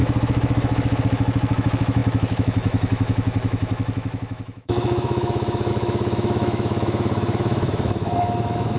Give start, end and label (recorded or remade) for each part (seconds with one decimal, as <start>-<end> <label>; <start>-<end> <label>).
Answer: 0.0-8.8 remade